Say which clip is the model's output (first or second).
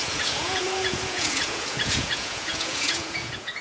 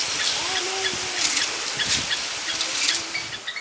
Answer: first